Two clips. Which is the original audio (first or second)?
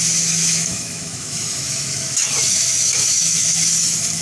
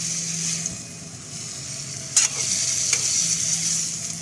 second